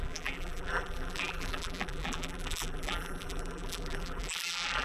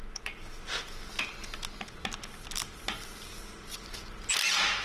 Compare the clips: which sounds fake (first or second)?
first